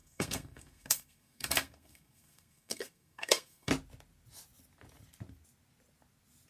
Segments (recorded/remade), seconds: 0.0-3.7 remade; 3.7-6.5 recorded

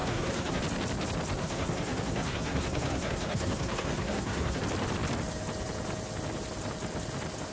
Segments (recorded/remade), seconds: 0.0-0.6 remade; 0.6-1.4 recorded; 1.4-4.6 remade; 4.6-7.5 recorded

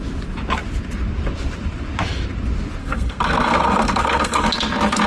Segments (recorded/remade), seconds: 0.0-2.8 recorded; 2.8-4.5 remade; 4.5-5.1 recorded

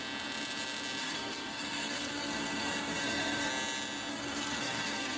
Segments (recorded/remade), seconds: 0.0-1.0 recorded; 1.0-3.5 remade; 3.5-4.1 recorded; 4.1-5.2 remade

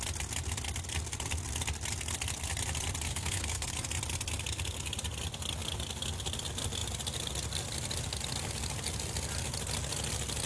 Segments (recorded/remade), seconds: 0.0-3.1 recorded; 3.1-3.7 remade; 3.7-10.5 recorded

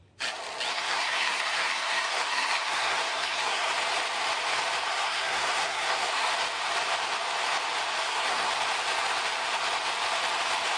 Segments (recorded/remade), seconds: 0.0-0.7 recorded; 0.7-3.7 remade; 3.7-4.9 recorded; 4.9-6.3 remade; 6.3-8.0 recorded; 8.0-8.5 remade; 8.5-10.8 recorded